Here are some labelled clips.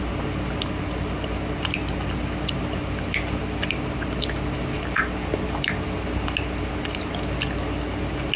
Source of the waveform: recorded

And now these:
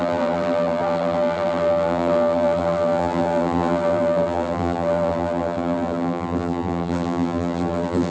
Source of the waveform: remade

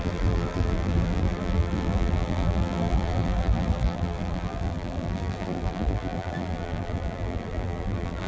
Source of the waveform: remade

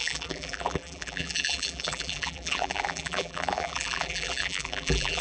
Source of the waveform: remade